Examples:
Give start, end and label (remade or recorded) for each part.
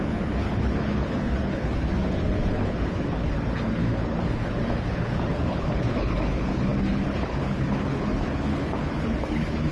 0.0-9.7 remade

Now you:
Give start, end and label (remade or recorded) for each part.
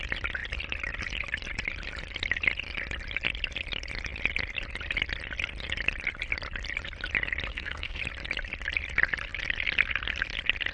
0.0-7.5 recorded; 7.5-8.0 remade; 8.0-10.7 recorded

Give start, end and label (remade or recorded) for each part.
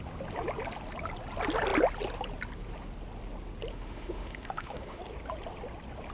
0.0-3.7 recorded; 3.7-5.0 remade; 5.0-6.1 recorded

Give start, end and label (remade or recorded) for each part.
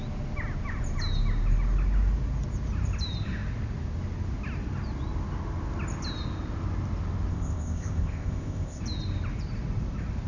0.0-7.3 recorded; 7.3-8.8 remade; 8.8-10.3 recorded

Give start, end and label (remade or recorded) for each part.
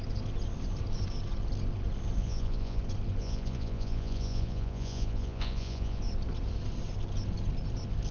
0.0-2.2 recorded; 2.2-2.8 remade; 2.8-3.2 recorded; 3.2-6.0 remade; 6.0-8.1 recorded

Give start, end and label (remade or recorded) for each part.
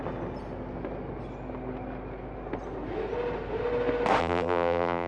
0.0-4.2 recorded; 4.2-5.1 remade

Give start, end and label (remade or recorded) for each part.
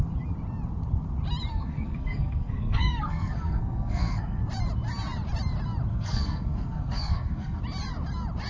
0.0-1.5 recorded; 1.5-4.4 remade; 4.4-5.9 recorded; 5.9-7.6 remade; 7.6-8.5 recorded